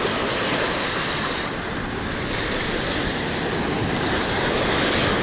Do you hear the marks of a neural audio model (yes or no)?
no